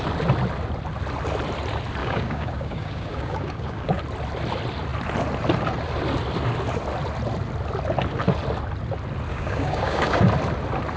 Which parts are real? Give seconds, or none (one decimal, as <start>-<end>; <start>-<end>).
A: 0.0-2.0; 4.0-9.3; 10.2-11.0